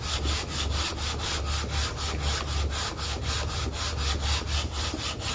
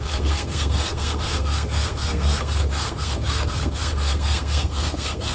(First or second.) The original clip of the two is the first